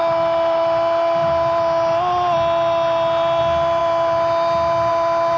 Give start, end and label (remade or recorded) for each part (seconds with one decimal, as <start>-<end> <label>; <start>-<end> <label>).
0.0-5.4 recorded